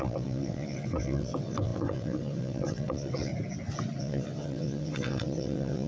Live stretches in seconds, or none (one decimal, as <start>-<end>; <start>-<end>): 3.3-4.0